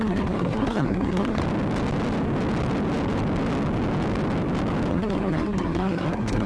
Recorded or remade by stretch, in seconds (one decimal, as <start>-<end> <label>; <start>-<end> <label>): 0.0-1.4 remade; 1.4-4.9 recorded; 4.9-6.5 remade